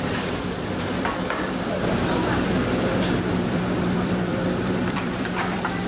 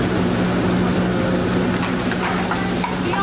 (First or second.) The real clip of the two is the second